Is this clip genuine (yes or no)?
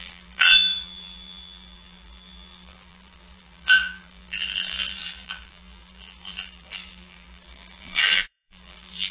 no